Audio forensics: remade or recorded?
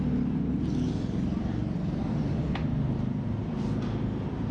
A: remade